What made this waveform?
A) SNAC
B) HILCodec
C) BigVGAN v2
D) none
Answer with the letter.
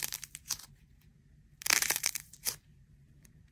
C